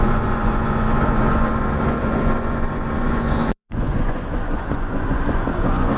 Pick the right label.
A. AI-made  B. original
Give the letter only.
A